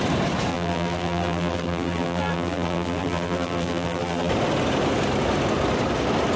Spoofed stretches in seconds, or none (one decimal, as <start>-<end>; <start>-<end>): 0.5-4.3